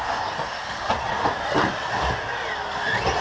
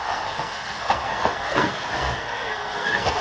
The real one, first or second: first